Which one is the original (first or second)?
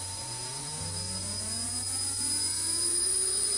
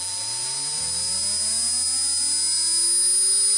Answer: second